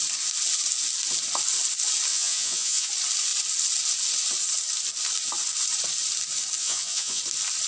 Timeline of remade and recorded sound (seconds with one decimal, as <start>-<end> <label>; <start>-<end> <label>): 0.0-2.1 recorded; 2.1-2.9 remade; 2.9-6.6 recorded; 6.6-7.2 remade; 7.2-7.7 recorded